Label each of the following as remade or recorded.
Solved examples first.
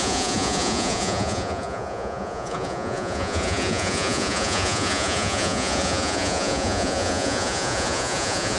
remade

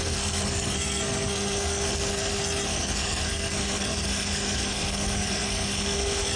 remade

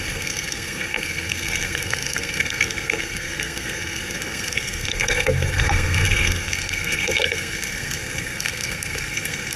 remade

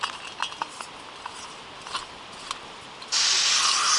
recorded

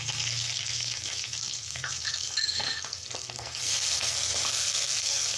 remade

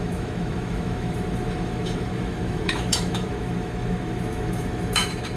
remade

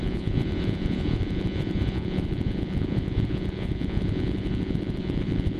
remade